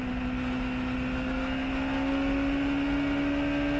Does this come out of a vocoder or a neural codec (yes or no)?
no